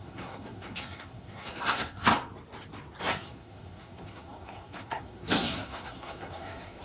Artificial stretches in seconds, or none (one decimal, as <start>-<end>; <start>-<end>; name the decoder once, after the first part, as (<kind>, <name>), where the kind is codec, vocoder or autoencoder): 0.0-2.1 (codec, SNAC); 3.0-6.8